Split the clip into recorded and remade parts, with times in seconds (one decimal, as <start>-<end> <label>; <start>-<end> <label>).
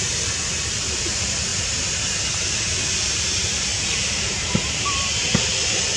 0.0-1.5 remade; 1.5-2.4 recorded; 2.4-6.0 remade